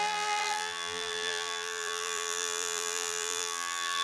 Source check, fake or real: fake